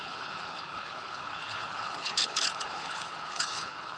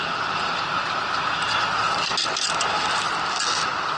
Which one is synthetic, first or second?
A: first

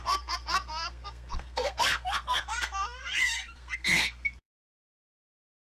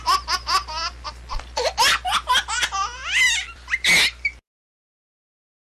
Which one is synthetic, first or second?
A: first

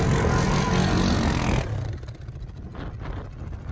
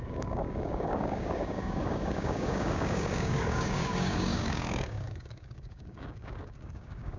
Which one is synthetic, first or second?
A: second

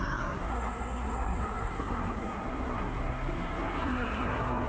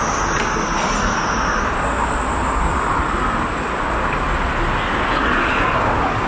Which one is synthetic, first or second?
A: first